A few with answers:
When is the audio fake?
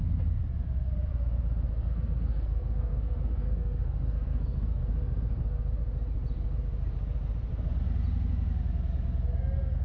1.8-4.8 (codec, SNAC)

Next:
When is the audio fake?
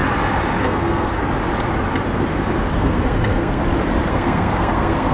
0.6-1.2 (codec, SNAC); 2.7-3.6; 4.1-5.1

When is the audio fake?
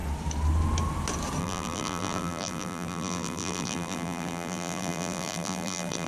1.4-6.1 (vocoder, BigVGAN v2)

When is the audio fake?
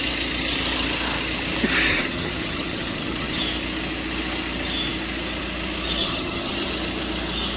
1.9-3.4 (vocoder, HiFi-GAN); 6.0-6.7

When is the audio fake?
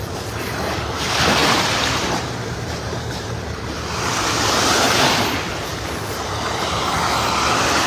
1.4-5.2 (vocoder, BigVGAN v2)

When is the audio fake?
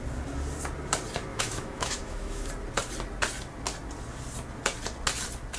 1.3-2.5 (autoencoder, DAC-VAE)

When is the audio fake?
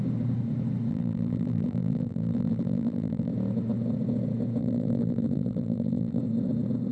0.9-3.3 (vocoder, BigVGAN v2); 4.6-6.2